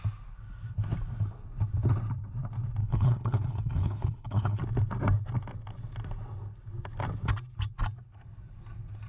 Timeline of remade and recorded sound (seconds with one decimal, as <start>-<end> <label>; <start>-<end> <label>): 0.0-2.8 recorded; 2.8-4.6 remade; 4.6-9.1 recorded